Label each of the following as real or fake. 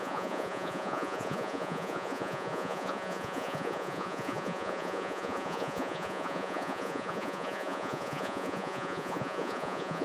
fake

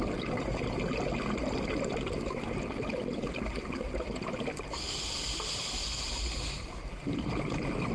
real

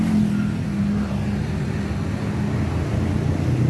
real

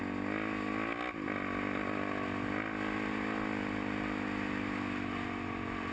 real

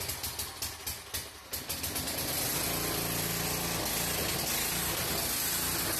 real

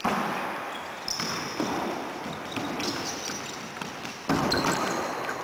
real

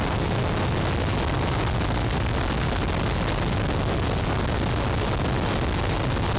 real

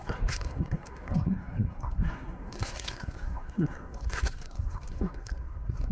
fake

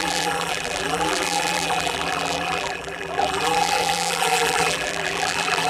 fake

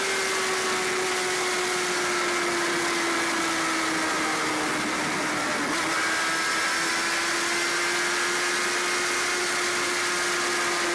real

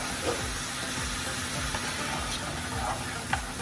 real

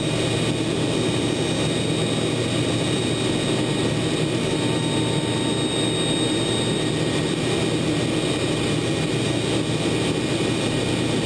real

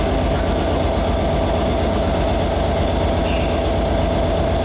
real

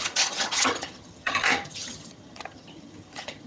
fake